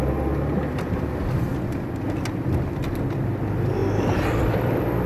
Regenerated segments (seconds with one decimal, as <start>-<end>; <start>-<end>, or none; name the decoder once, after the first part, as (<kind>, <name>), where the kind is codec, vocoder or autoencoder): 3.8-5.1 (vocoder, BigVGAN v2)